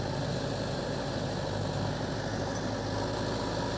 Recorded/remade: recorded